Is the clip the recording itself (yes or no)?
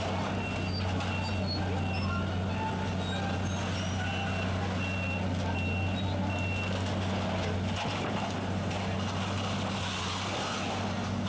yes